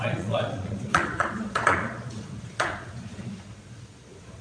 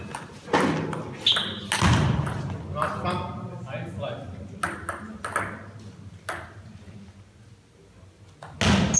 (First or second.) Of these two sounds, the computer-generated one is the first